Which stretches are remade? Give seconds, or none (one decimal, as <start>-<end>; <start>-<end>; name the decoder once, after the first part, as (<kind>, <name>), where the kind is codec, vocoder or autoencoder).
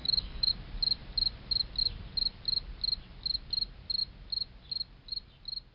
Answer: 0.0-0.5 (codec, DAC)